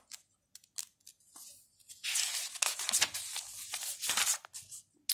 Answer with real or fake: real